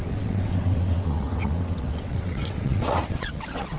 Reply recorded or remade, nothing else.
remade